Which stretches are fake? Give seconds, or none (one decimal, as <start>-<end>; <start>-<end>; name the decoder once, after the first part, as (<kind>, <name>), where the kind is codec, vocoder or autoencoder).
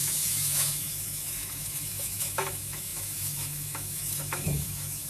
0.0-5.1 (autoencoder, DAC-VAE)